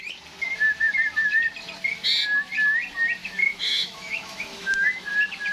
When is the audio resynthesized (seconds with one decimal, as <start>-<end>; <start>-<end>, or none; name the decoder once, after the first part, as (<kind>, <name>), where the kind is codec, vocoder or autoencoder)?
3.2-5.1 (autoencoder, DAC-VAE)